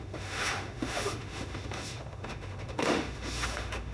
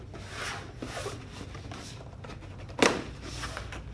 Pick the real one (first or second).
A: second